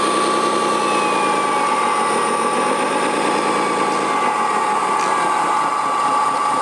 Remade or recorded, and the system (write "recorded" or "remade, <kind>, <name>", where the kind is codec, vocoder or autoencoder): recorded